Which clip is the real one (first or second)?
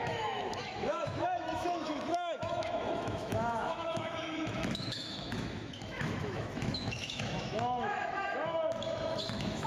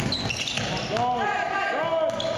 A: second